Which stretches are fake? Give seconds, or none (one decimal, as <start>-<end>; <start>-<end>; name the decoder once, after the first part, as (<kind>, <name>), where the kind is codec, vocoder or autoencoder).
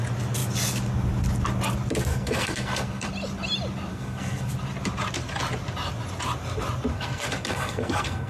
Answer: 2.1-3.1 (codec, SNAC); 3.9-4.5; 6.9-8.3